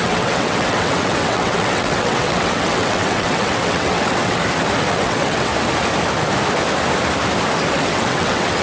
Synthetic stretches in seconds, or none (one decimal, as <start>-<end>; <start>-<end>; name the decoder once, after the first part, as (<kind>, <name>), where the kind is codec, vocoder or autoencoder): 0.0-4.4 (vocoder, WaveNeXt); 4.9-5.5; 7.7-8.6